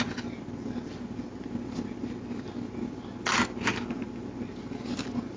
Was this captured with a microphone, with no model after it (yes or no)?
yes